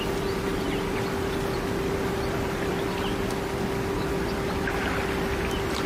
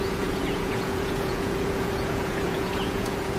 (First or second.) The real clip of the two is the first